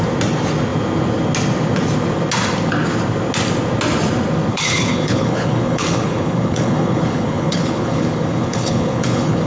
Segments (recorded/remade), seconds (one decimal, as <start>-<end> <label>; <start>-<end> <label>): 0.0-4.5 recorded; 4.5-9.5 remade

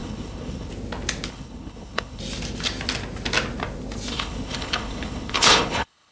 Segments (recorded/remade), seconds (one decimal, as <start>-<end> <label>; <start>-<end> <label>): 0.0-0.7 remade; 0.7-1.3 recorded; 1.3-2.2 remade; 2.2-4.1 recorded; 4.1-6.1 remade

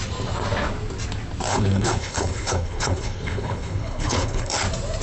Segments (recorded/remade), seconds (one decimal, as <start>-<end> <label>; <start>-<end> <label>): 0.0-1.5 recorded; 1.5-4.5 remade; 4.5-5.0 recorded

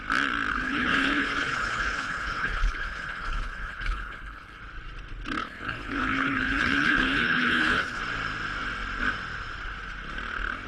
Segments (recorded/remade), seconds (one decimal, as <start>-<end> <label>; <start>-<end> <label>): 0.0-0.5 recorded; 0.5-4.6 remade; 4.6-5.4 recorded; 5.4-8.0 remade; 8.0-10.7 recorded

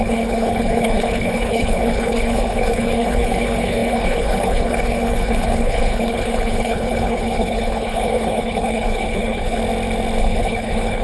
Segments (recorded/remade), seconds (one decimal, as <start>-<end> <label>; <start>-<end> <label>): 0.0-9.6 remade; 9.6-10.2 recorded; 10.2-11.0 remade

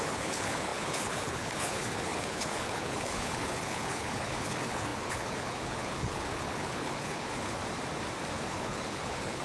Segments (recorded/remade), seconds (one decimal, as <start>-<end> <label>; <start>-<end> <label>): 0.0-7.6 remade; 7.6-8.5 recorded; 8.5-9.4 remade

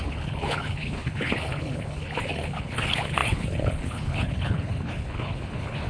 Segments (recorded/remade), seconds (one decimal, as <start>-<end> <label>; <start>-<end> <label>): 0.0-5.9 remade